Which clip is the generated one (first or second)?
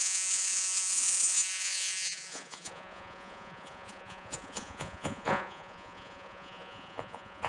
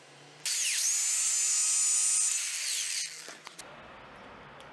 first